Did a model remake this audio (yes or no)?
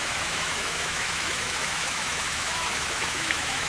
yes